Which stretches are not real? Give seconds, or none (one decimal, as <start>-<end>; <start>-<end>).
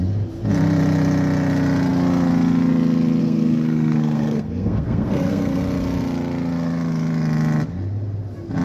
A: 3.2-5.6